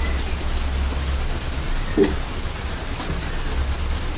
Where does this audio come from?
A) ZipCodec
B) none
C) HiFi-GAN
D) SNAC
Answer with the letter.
B